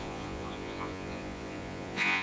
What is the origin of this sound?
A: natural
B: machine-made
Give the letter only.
B